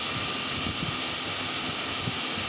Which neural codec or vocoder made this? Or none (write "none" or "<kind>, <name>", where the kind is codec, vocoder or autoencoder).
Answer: none